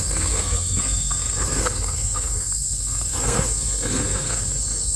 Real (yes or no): no